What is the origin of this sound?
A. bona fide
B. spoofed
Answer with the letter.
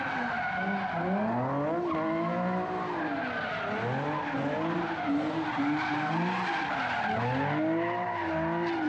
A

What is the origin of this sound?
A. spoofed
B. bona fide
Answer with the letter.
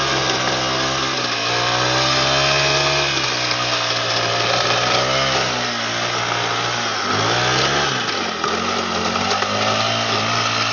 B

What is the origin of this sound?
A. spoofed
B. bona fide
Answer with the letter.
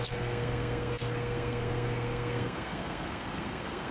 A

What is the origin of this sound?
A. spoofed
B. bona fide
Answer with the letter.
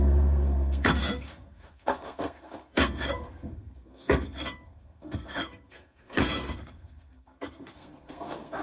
A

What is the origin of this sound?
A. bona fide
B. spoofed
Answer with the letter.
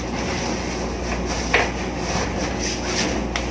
A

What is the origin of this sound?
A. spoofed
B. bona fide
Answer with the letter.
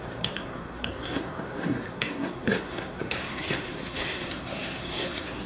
A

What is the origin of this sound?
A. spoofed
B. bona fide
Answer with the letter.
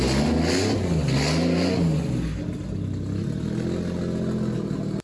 B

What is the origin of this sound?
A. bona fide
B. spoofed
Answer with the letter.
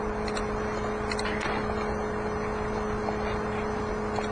A